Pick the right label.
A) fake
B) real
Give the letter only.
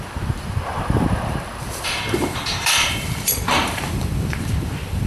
A